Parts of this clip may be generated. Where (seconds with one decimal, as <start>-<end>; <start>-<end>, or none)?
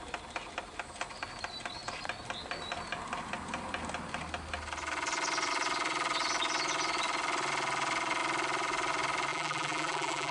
9.3-10.3